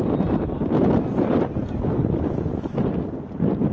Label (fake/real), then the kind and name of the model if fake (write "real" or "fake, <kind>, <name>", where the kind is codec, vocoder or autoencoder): real